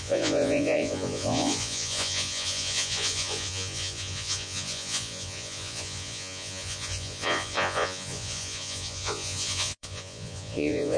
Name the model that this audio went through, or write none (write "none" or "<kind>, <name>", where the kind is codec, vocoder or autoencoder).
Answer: vocoder, Vocos